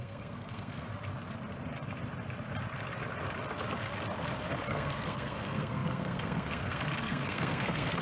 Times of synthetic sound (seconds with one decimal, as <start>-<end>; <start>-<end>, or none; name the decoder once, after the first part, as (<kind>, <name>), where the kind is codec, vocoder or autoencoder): 0.0-0.9 (codec, SNAC); 4.7-8.0